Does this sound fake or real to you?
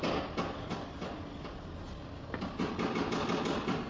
real